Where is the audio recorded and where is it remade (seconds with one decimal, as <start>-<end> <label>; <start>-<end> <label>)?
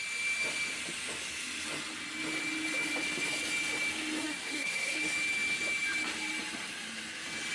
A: 0.0-4.2 recorded; 4.2-5.0 remade; 5.0-7.5 recorded